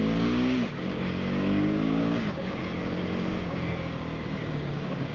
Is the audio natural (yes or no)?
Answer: no